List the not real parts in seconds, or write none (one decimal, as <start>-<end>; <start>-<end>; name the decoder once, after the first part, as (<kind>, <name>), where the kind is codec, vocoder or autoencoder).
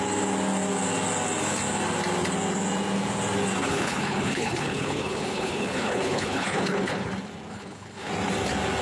3.6-7.1 (codec, HILCodec); 7.5-8.1